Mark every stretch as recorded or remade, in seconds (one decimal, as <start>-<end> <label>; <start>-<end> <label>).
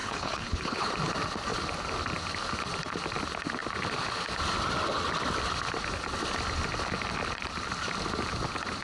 0.0-0.9 remade; 0.9-8.8 recorded